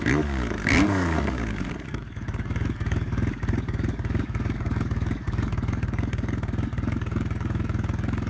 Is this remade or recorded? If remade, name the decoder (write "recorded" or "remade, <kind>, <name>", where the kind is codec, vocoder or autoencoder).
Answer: remade, codec, DAC